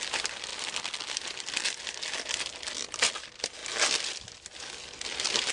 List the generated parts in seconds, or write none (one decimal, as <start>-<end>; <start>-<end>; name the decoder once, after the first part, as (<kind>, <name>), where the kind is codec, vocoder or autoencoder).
none